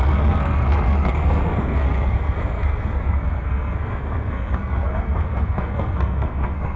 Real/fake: fake